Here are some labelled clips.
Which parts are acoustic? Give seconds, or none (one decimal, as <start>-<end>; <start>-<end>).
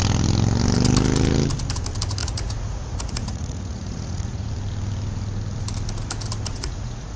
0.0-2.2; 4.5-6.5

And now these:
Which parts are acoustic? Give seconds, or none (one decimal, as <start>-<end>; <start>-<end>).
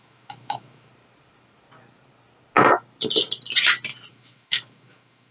0.9-4.1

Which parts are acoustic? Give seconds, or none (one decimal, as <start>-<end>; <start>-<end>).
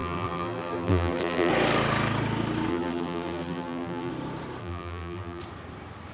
1.5-2.7; 4.1-4.6; 5.4-6.1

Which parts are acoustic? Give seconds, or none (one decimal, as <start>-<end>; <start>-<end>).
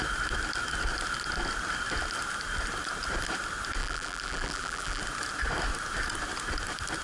0.0-3.8; 5.0-7.0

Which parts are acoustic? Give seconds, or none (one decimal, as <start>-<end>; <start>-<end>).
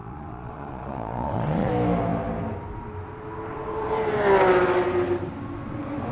1.7-6.1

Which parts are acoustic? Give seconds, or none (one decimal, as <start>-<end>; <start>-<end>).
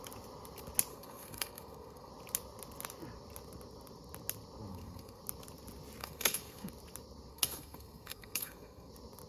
0.0-0.9; 2.1-4.7; 5.2-6.0; 6.7-7.3; 8.9-9.3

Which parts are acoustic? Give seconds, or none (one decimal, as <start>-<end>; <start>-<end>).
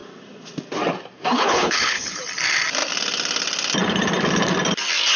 0.0-1.3; 2.2-5.2